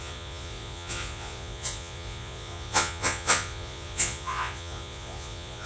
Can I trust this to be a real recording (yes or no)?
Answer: no